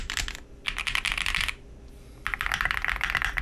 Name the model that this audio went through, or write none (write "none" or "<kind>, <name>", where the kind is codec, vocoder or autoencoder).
none